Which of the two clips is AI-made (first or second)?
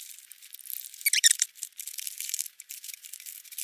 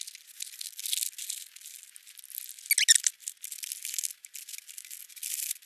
first